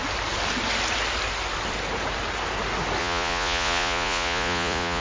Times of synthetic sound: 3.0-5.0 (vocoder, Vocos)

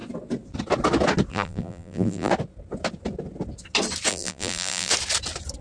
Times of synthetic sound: 1.3-2.3 (vocoder, BigVGAN v2); 4.1-4.9

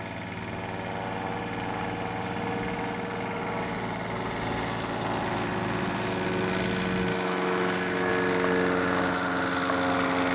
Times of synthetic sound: 7.1-8.1 (autoencoder, DAC-VAE)